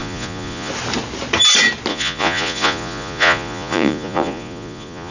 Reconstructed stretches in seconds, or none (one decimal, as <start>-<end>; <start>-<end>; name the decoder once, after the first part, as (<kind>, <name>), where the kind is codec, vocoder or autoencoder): 0.0-0.7 (vocoder, Vocos); 1.9-5.1